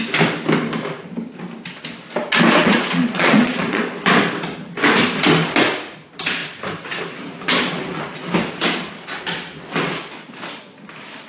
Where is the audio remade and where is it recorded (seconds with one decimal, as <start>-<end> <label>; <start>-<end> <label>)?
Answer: 0.0-2.6 recorded; 2.6-3.8 remade; 3.8-11.3 recorded